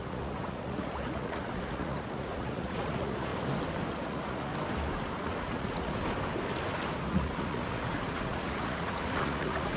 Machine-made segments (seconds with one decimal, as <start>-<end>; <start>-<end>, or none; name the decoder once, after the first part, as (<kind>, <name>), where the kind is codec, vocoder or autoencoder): 0.0-3.3 (vocoder, Vocos); 3.9-4.5; 5.2-6.0; 7.1-9.8